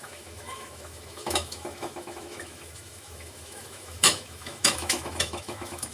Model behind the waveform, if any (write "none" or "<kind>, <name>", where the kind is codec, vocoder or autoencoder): autoencoder, DAC-VAE